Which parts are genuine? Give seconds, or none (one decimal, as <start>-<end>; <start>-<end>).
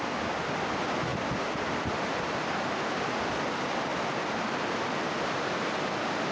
0.0-6.3